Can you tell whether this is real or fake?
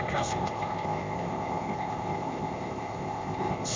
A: fake